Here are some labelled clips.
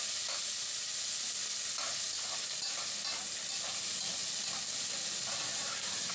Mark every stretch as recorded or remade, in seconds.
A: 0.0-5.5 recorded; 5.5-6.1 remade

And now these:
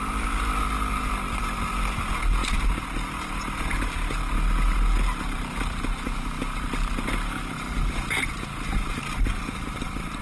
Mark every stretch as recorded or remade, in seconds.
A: 0.0-2.4 recorded; 2.4-2.9 remade; 2.9-10.2 recorded

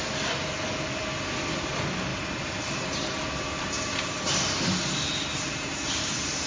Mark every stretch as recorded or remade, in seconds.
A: 0.0-2.1 recorded; 2.1-4.2 remade; 4.2-5.3 recorded; 5.3-6.5 remade